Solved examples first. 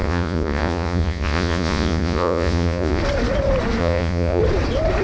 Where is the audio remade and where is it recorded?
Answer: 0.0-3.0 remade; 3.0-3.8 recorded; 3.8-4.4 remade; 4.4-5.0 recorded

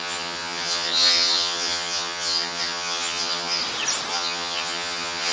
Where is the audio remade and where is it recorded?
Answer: 0.0-3.6 remade; 3.6-4.1 recorded; 4.1-5.3 remade

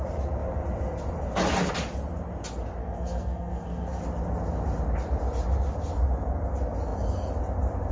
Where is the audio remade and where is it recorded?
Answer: 0.0-2.8 recorded; 2.8-4.0 remade; 4.0-7.9 recorded

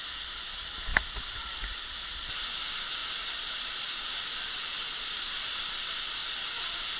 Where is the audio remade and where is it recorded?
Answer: 0.0-7.0 recorded

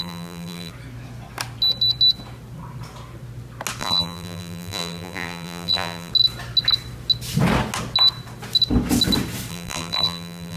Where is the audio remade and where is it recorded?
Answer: 0.0-0.7 remade; 0.7-3.8 recorded; 3.8-6.1 remade; 6.1-9.5 recorded; 9.5-10.6 remade

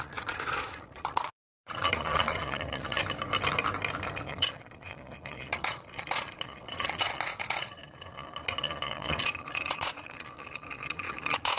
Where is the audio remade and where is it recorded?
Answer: 0.0-3.0 remade; 3.0-4.2 recorded; 4.2-11.6 remade

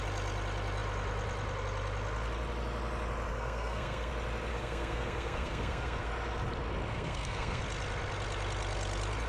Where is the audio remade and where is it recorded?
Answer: 0.0-3.3 recorded; 3.3-4.1 remade; 4.1-4.5 recorded; 4.5-6.1 remade; 6.1-6.9 recorded; 6.9-7.6 remade; 7.6-9.3 recorded

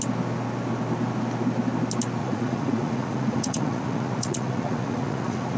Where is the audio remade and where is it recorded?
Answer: 0.0-2.2 recorded; 2.2-5.6 remade